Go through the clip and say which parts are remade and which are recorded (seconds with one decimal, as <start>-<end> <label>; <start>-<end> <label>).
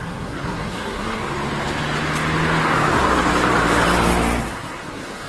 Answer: 0.0-1.2 remade; 1.2-4.4 recorded; 4.4-5.3 remade